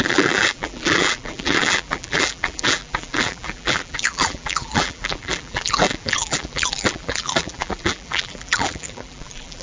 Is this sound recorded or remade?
remade